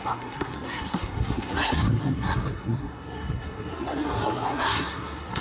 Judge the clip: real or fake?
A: fake